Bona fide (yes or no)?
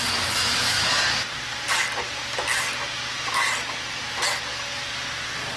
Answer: yes